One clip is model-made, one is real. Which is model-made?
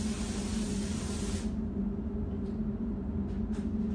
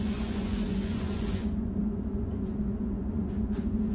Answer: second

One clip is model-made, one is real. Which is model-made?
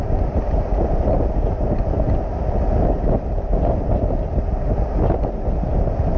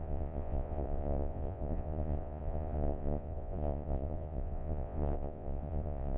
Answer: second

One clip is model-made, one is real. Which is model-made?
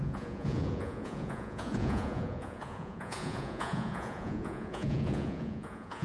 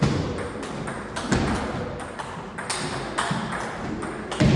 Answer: first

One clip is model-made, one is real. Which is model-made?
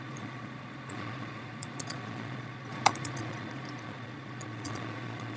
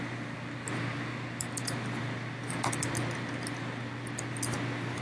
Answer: first